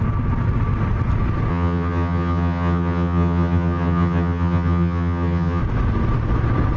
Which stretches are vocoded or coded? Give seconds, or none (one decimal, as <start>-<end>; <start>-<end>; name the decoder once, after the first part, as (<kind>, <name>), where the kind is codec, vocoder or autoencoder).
1.5-5.6 (vocoder, HiFi-GAN)